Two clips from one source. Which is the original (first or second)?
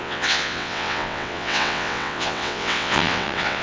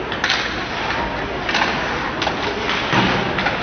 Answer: second